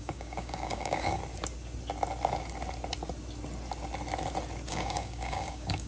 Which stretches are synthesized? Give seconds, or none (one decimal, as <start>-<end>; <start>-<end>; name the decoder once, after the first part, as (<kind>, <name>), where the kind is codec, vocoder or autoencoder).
0.0-1.2 (codec, DAC); 4.7-5.9